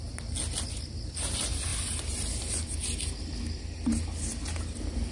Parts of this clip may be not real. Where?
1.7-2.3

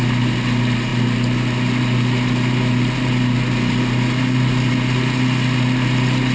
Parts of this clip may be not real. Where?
none